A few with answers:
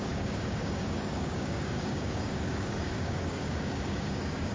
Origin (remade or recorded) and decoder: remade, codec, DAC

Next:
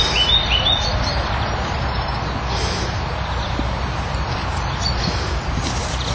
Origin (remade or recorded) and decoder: recorded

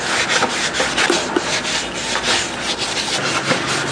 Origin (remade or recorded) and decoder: recorded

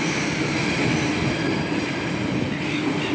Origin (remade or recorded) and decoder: recorded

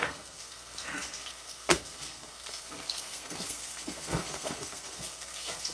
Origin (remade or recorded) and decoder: remade, codec, SNAC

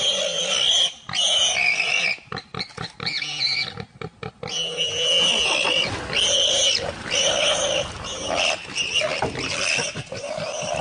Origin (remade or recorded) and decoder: recorded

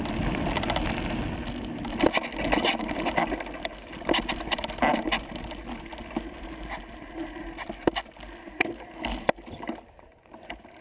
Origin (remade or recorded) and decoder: recorded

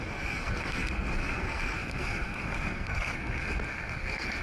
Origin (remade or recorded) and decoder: remade, codec, SNAC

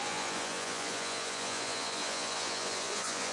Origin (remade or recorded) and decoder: remade, vocoder, Vocos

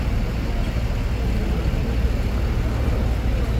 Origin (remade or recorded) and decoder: recorded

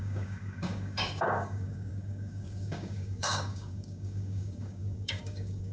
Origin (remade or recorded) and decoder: remade, codec, DAC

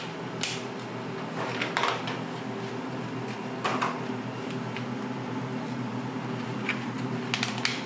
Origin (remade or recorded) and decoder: recorded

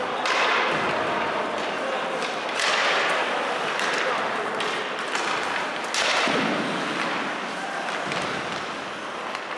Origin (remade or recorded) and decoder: recorded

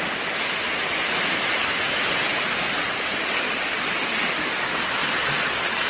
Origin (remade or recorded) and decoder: recorded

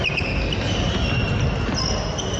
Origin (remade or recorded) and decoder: recorded